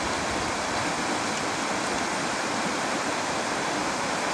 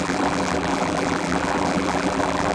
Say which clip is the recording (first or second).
first